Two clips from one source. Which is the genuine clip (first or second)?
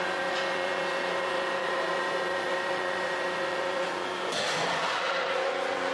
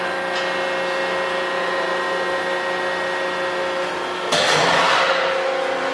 second